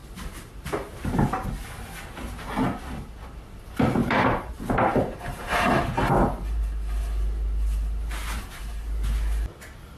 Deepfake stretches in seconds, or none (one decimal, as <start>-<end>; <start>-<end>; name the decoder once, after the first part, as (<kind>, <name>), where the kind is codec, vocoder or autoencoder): 4.0-4.5 (vocoder, BigVGAN v2); 4.9-5.8